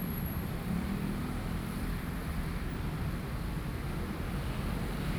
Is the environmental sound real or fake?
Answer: real